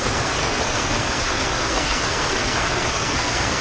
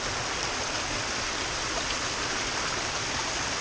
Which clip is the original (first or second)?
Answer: second